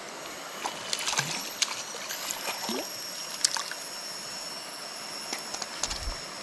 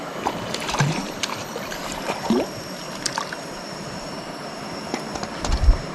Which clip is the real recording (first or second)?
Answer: first